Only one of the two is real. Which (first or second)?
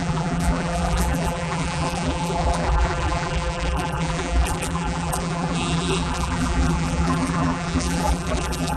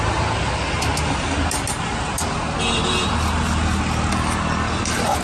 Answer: second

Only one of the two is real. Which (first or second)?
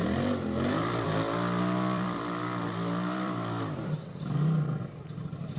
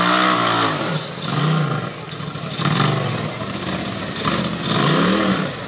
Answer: second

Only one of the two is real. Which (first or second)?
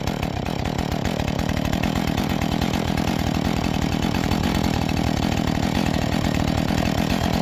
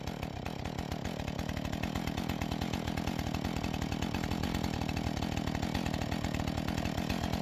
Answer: second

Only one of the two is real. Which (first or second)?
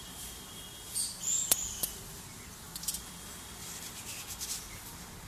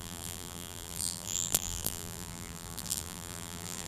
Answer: first